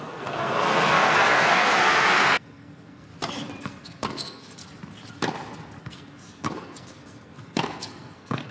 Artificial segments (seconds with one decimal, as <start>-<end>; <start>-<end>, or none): 0.0-3.1; 3.6-4.6; 5.8-8.5

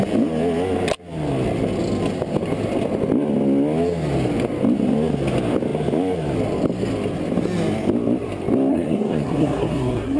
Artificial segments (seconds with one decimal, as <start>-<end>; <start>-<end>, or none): 8.7-10.2